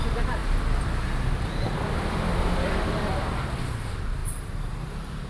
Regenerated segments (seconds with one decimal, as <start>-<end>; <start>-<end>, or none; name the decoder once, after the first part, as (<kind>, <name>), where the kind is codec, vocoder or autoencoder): 0.0-0.4 (vocoder, BigVGAN v2); 2.3-5.3